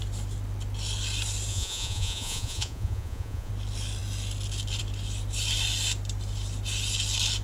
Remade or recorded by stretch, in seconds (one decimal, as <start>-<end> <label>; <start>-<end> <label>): 0.0-1.5 recorded; 1.5-3.5 remade; 3.5-7.4 recorded